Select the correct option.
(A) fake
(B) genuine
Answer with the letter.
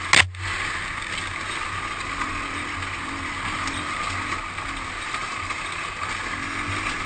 B